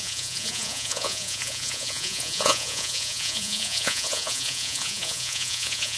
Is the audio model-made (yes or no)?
yes